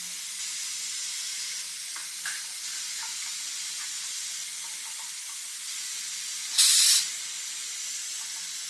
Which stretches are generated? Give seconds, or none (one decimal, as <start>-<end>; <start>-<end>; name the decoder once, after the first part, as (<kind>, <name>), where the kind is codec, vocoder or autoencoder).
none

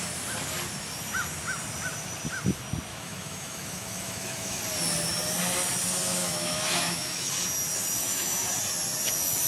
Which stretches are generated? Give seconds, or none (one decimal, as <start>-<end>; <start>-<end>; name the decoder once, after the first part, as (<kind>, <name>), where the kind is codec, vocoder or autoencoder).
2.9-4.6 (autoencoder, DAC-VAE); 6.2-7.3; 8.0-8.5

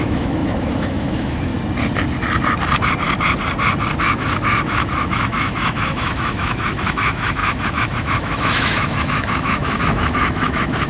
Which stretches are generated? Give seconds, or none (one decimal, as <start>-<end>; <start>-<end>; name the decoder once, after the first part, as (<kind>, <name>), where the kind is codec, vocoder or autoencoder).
0.0-1.5 (autoencoder, DAC-VAE); 4.0-10.9

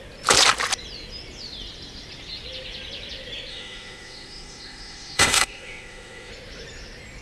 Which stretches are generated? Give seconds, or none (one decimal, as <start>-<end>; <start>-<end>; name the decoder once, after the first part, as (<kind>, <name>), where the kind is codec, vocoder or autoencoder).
3.5-6.3 (autoencoder, DAC-VAE)

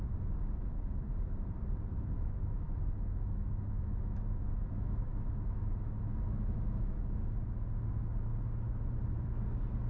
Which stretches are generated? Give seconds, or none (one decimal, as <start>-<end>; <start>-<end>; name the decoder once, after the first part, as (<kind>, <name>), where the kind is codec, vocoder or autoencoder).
1.9-7.0 (autoencoder, DAC-VAE)